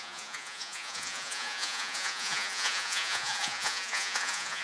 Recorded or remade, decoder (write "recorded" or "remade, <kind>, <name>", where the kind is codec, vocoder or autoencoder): remade, vocoder, Vocos